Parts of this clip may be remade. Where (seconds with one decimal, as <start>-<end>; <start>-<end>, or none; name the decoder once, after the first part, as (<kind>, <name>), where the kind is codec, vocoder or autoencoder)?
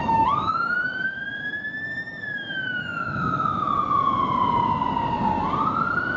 0.0-3.7 (autoencoder, DAC-VAE)